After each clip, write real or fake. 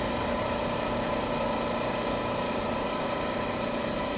fake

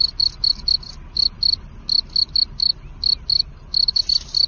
real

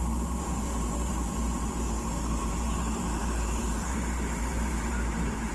fake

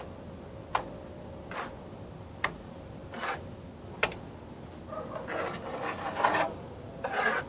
real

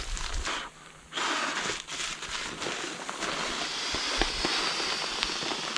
real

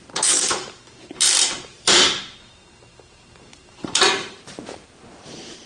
fake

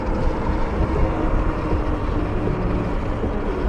real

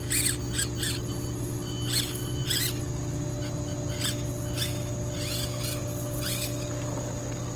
real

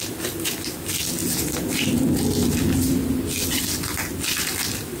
real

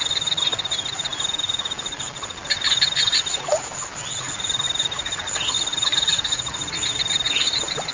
real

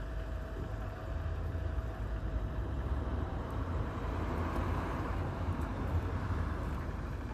fake